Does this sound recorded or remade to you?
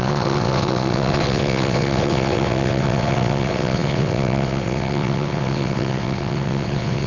remade